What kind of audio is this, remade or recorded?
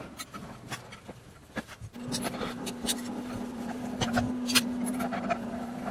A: remade